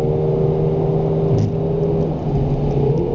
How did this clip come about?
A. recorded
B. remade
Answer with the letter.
A